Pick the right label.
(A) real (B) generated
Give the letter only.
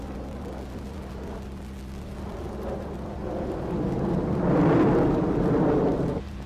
A